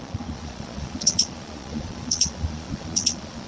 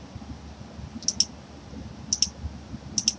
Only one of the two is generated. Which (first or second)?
first